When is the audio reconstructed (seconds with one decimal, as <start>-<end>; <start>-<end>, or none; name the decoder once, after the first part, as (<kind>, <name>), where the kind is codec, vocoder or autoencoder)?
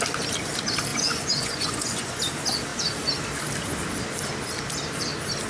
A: 0.9-2.2 (vocoder, Vocos)